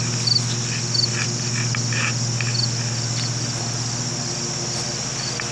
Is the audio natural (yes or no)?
yes